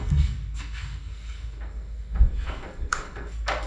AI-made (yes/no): yes